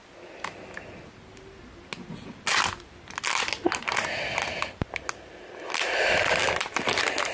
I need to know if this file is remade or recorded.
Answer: recorded